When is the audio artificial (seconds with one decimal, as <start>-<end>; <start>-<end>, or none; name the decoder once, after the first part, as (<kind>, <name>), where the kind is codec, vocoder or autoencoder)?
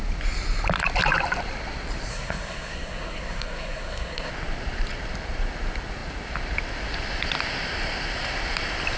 2.1-4.3 (codec, SNAC)